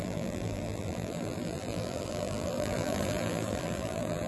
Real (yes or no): no